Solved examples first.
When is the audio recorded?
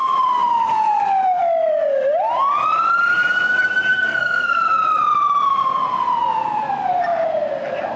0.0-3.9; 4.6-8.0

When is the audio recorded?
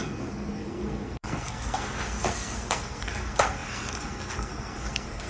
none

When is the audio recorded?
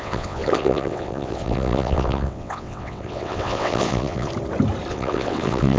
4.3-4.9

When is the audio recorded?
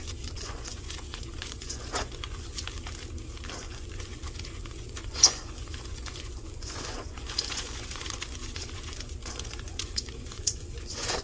2.6-3.6